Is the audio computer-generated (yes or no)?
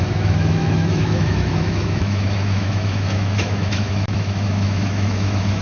yes